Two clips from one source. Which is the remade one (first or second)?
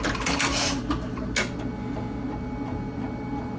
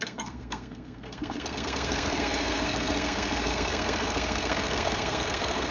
second